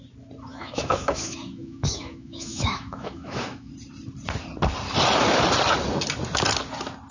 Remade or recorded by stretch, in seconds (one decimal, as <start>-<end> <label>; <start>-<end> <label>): 0.0-0.5 recorded; 0.5-3.7 remade; 3.7-7.1 recorded